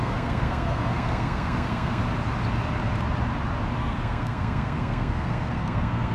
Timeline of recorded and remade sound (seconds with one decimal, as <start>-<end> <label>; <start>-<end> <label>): 0.0-2.0 remade; 2.0-3.8 recorded; 3.8-6.1 remade